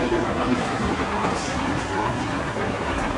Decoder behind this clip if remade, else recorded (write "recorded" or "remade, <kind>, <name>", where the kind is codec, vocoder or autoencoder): remade, codec, SNAC